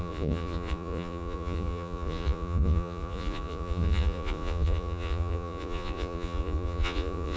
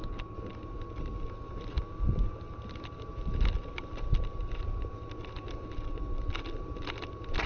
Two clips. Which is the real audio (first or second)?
second